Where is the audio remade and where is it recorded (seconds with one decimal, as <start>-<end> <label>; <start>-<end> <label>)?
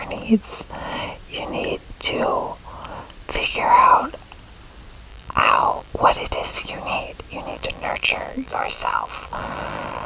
0.0-5.1 recorded; 5.1-5.9 remade; 5.9-7.5 recorded; 7.5-10.1 remade